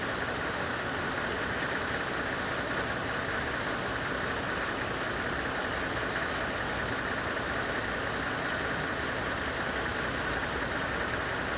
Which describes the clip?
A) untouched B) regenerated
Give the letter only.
A